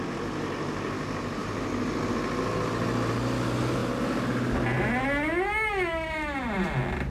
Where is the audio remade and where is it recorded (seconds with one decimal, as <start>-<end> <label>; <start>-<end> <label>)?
0.0-7.1 recorded